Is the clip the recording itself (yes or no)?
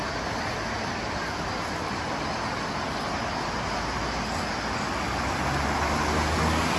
yes